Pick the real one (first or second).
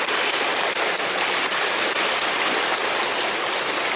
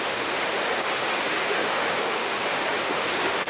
first